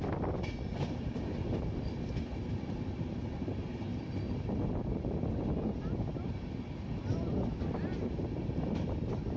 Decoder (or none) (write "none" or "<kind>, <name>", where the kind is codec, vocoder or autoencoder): none